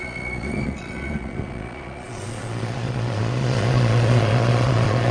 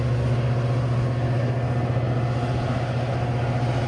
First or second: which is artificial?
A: first